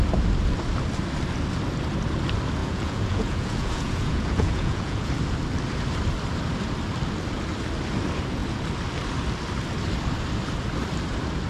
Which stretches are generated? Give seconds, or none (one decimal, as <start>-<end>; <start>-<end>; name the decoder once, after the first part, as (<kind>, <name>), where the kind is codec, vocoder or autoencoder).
2.6-5.1 (vocoder, Vocos)